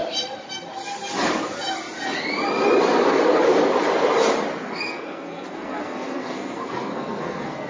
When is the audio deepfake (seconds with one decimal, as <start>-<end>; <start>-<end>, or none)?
4.6-7.7